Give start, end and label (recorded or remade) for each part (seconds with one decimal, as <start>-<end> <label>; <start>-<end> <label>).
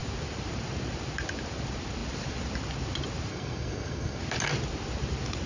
0.0-3.3 recorded; 3.3-4.2 remade; 4.2-5.5 recorded